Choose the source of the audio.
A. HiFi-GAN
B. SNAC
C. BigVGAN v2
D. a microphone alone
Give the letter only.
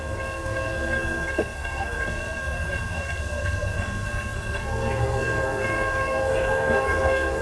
B